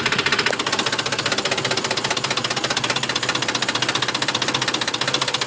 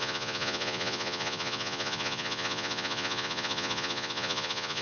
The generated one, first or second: second